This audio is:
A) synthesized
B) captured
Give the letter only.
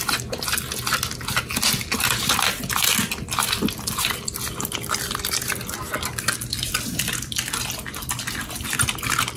B